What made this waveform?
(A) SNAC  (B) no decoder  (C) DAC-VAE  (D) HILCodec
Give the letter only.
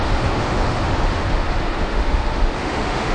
C